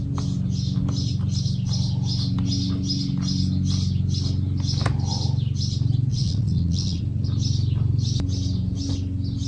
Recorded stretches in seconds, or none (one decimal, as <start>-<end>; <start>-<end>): 0.0-6.1; 7.0-9.5